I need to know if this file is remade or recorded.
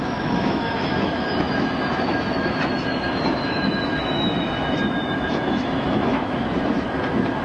remade